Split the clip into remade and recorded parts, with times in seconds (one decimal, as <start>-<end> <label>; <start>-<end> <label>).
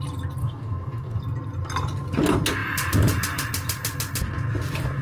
0.0-0.4 recorded; 0.4-1.2 remade; 1.2-5.0 recorded